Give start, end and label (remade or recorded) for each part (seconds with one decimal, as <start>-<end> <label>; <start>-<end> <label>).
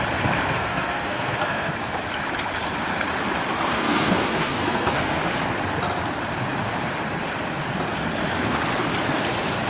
0.0-0.5 recorded; 0.5-1.7 remade; 1.7-3.7 recorded; 3.7-5.2 remade; 5.2-9.7 recorded